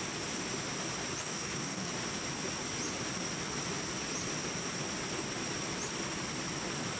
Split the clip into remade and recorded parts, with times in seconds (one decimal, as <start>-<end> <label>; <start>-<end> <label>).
0.0-1.2 recorded; 1.2-1.9 remade; 1.9-7.0 recorded

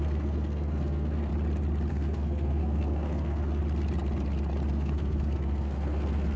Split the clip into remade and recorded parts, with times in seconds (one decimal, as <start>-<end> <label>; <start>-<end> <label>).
0.0-1.3 remade; 1.3-1.9 recorded; 1.9-3.6 remade; 3.6-4.7 recorded; 4.7-6.4 remade

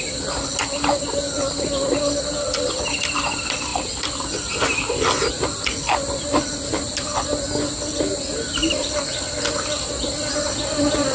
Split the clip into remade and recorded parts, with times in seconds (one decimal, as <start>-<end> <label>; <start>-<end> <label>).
0.0-11.1 recorded

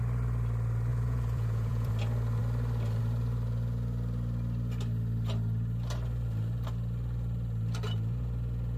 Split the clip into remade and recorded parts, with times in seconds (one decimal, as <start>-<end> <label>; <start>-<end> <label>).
0.0-0.9 recorded; 0.9-1.9 remade; 1.9-8.8 recorded

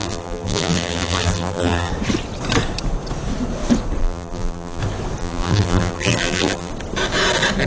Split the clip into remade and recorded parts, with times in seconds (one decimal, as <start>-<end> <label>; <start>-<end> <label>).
0.0-1.9 remade; 1.9-4.0 recorded; 4.0-4.8 remade; 4.8-5.2 recorded; 5.2-6.7 remade; 6.7-7.7 recorded

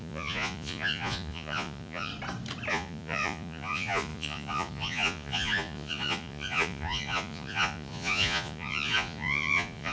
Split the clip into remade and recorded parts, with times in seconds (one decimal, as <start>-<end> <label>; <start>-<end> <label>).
0.0-2.1 remade; 2.1-2.7 recorded; 2.7-9.9 remade

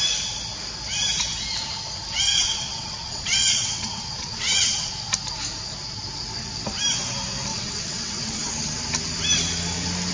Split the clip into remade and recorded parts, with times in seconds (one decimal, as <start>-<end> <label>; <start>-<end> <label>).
0.0-2.3 recorded; 2.3-4.9 remade; 4.9-7.5 recorded; 7.5-8.5 remade; 8.5-10.1 recorded

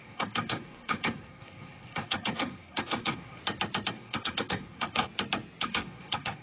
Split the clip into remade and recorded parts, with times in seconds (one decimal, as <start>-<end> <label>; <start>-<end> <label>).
0.0-3.4 remade; 3.4-3.9 recorded; 3.9-5.0 remade; 5.0-5.6 recorded; 5.6-6.4 remade